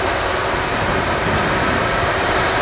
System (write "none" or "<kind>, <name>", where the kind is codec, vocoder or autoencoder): vocoder, BigVGAN v2